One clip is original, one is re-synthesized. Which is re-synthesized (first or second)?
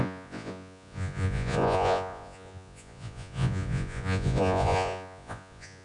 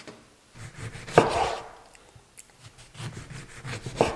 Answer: first